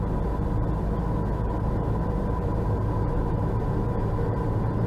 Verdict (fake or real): real